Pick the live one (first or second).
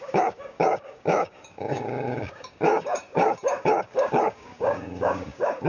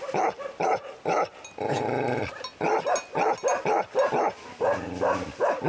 second